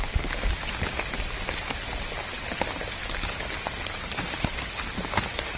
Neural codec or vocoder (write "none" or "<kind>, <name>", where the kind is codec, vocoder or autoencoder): none